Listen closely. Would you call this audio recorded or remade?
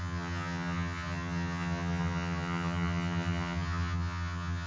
remade